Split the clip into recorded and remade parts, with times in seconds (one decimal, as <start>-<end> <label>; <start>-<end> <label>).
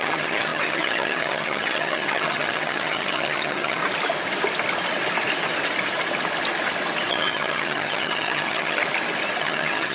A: 0.0-3.8 remade; 3.8-7.1 recorded; 7.1-8.8 remade; 8.8-9.4 recorded; 9.4-9.9 remade